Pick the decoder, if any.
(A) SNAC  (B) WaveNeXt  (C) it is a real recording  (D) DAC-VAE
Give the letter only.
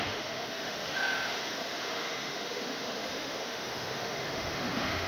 D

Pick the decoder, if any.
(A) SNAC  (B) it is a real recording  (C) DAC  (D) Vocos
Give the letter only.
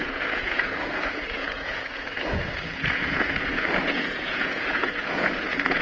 D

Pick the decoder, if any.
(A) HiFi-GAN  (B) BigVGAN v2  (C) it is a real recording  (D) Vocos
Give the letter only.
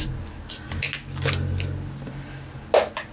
C